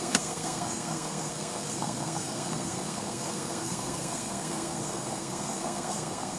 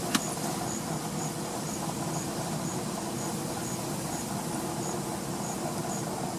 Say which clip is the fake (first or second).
first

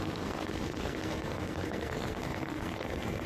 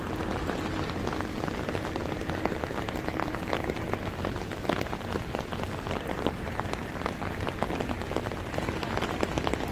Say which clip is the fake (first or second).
first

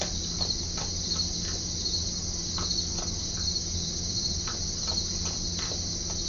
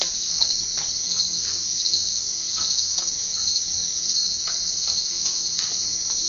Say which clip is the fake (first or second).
second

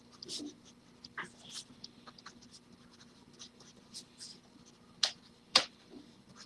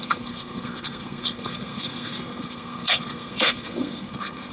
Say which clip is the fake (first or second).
second